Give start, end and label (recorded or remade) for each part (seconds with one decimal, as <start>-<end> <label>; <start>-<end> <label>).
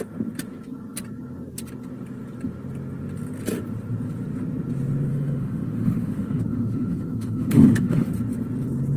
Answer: 0.0-5.1 recorded; 5.1-8.1 remade; 8.1-9.0 recorded